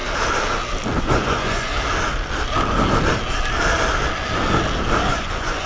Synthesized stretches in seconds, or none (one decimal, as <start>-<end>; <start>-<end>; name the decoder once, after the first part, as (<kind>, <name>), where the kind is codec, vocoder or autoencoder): 1.0-1.7 (vocoder, Vocos); 5.1-5.7

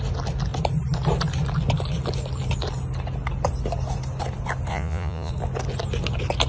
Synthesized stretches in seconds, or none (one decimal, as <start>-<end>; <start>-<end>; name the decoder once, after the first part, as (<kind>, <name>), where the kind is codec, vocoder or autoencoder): 4.7-5.3 (vocoder, Vocos)

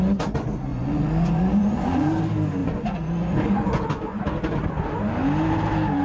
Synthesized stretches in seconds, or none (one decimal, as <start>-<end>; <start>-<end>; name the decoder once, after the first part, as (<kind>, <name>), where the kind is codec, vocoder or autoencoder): 0.7-2.1 (vocoder, Vocos); 2.6-4.2

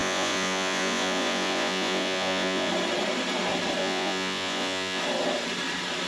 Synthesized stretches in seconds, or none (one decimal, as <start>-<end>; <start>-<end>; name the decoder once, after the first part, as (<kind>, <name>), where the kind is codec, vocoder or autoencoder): 0.0-2.7 (vocoder, Vocos); 3.8-5.0

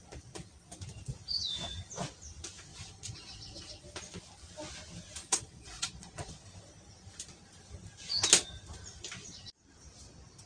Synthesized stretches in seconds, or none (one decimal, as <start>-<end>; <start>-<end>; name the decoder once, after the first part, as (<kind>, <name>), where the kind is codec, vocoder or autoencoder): 2.7-3.8 (vocoder, Vocos); 5.2-6.3